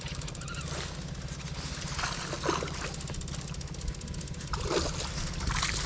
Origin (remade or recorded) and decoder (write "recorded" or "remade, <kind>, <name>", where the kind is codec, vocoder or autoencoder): recorded